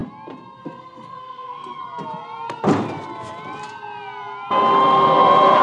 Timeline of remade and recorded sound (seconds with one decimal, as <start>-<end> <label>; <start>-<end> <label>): 0.0-0.6 recorded; 0.6-1.8 remade; 1.8-5.6 recorded